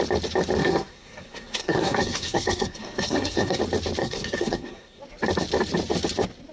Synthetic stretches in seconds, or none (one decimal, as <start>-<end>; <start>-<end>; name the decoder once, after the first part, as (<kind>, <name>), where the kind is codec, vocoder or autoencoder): 0.6-3.6 (codec, SNAC); 4.0-5.0